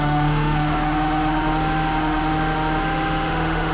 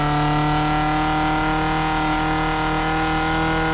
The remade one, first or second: first